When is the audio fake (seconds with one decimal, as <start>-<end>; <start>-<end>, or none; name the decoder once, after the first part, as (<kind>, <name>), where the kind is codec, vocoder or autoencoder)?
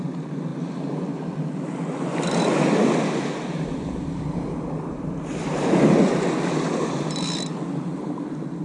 none